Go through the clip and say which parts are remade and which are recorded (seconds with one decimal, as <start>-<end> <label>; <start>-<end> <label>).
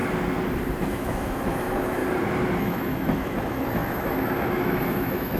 0.0-0.9 recorded; 0.9-2.0 remade; 2.0-2.6 recorded; 2.6-5.4 remade